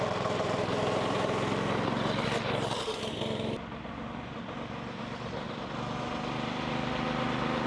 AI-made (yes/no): no